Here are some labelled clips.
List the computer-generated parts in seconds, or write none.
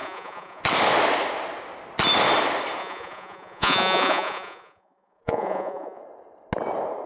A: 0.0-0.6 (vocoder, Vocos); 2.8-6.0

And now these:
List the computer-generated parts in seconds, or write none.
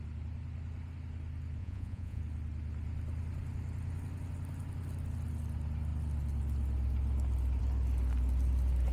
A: 1.6-2.2 (vocoder, Vocos)